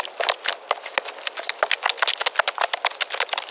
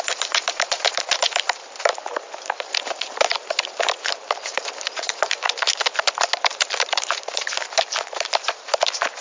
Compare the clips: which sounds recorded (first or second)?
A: first